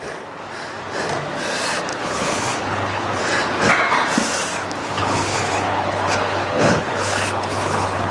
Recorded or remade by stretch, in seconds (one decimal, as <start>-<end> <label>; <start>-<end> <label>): 0.0-1.9 recorded; 1.9-3.2 remade; 3.2-4.8 recorded; 4.8-8.1 remade